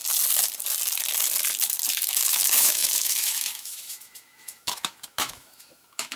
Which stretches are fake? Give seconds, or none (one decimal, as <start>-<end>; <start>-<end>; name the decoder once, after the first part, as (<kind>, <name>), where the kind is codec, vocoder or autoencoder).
1.9-6.2 (autoencoder, DAC-VAE)